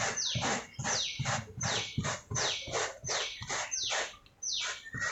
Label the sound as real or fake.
real